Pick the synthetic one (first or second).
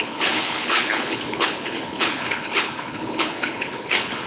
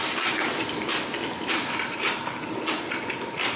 first